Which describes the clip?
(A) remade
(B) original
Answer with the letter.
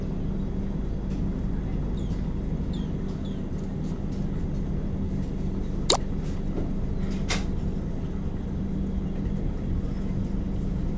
B